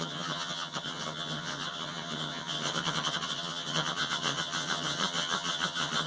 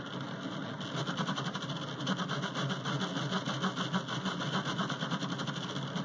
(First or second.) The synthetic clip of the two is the first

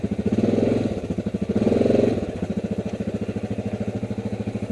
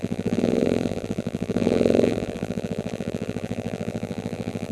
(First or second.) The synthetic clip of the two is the second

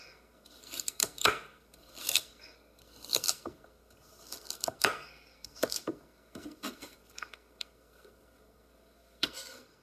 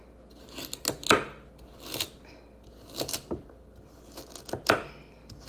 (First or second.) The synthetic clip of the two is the first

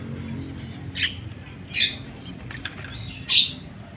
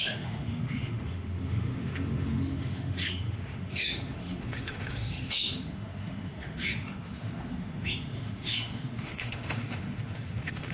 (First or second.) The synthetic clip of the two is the second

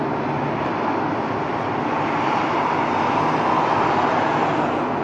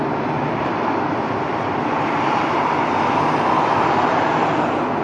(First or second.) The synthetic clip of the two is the second